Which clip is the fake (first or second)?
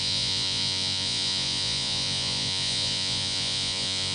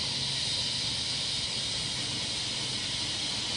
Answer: first